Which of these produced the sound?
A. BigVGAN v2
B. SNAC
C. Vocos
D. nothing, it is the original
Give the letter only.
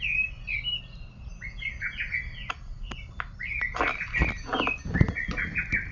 D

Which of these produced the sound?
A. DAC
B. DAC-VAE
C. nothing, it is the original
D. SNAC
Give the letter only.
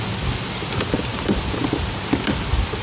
C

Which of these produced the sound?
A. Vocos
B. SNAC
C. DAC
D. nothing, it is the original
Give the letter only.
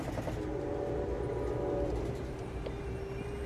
D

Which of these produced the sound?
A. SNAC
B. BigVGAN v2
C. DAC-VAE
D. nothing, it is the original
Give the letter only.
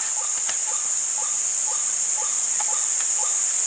D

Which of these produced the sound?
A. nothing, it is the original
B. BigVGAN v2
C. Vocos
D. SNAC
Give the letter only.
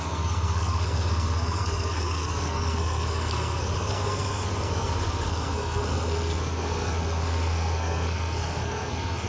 D